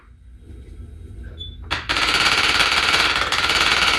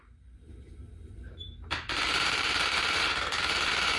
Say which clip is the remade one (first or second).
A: second